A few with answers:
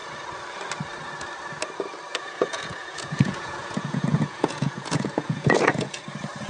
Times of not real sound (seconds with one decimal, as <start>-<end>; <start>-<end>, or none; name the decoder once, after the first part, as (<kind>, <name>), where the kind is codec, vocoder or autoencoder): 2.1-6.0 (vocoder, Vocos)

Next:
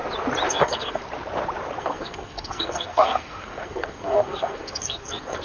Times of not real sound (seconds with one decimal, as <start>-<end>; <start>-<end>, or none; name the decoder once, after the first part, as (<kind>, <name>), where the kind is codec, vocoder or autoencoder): 0.5-1.0 (codec, SNAC); 1.8-5.4

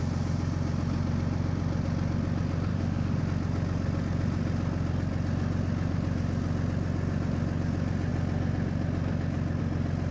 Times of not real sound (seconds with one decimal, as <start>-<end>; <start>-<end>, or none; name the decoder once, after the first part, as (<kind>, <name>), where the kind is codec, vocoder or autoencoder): 2.7-3.2 (autoencoder, DAC-VAE)